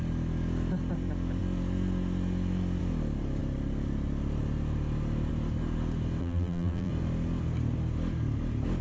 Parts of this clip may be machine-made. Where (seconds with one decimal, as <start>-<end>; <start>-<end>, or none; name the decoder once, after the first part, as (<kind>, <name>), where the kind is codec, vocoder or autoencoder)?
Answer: 6.2-6.9 (vocoder, BigVGAN v2)